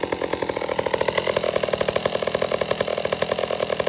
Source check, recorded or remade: recorded